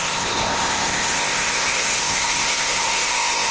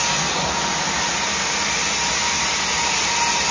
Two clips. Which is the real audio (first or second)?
second